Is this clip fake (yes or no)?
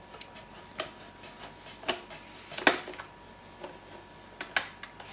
no